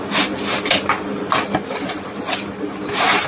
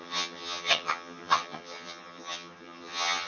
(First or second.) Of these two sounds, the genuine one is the first